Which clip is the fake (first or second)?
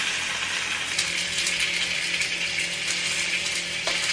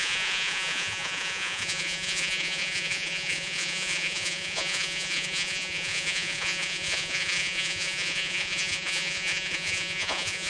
second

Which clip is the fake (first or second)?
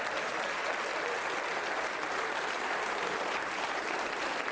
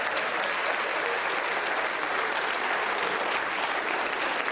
first